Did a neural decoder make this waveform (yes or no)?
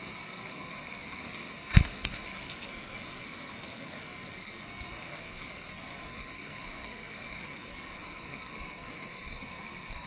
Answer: yes